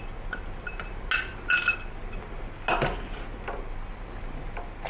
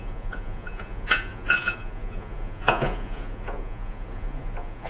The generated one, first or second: second